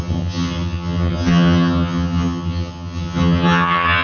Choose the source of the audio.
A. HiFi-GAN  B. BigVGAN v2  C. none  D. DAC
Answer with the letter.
A